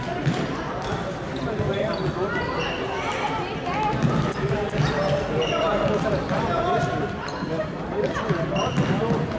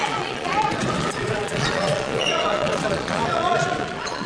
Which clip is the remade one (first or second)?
second